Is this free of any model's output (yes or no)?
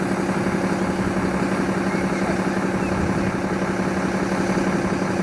yes